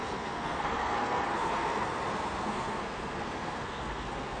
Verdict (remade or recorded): remade